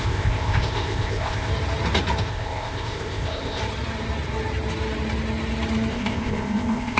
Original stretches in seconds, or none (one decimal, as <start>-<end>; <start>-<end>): 1.5-2.2; 3.6-5.9